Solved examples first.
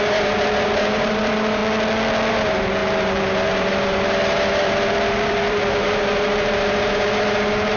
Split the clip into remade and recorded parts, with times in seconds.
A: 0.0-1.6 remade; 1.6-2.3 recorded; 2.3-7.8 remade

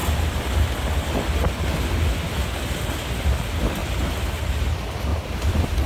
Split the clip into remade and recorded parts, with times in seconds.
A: 0.0-3.8 recorded; 3.8-4.4 remade; 4.4-5.1 recorded; 5.1-5.9 remade

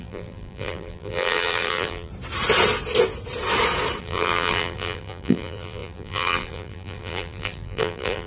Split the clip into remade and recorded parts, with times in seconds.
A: 0.0-2.1 remade; 2.1-4.0 recorded; 4.0-8.3 remade

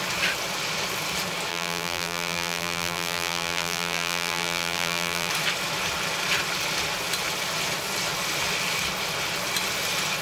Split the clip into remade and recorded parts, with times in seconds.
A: 0.0-1.5 recorded; 1.5-5.3 remade; 5.3-10.2 recorded

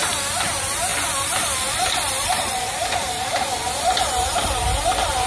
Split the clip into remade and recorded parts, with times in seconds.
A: 0.0-0.9 recorded; 0.9-4.1 remade; 4.1-5.3 recorded

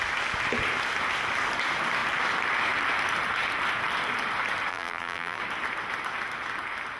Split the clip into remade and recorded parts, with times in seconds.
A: 0.0-4.7 recorded; 4.7-5.4 remade; 5.4-7.0 recorded